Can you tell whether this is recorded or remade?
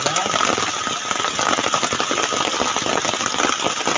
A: recorded